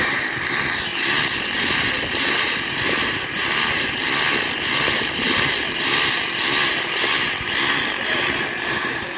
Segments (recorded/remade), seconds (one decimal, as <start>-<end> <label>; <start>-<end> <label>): 0.0-0.9 remade; 0.9-2.0 recorded; 2.0-3.4 remade; 3.4-7.9 recorded; 7.9-9.2 remade